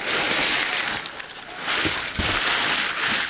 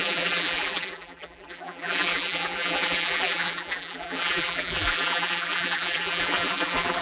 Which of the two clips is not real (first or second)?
second